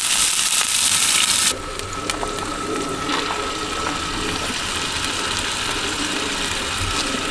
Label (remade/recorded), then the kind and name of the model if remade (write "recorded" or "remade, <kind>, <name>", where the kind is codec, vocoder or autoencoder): recorded